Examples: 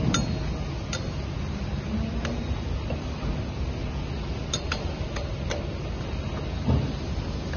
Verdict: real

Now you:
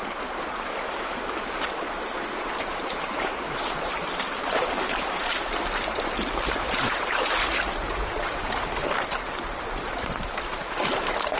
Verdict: fake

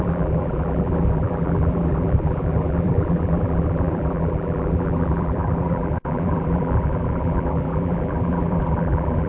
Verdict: fake